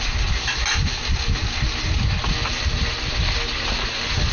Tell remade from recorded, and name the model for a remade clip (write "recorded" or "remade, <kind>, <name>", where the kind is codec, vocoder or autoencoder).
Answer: recorded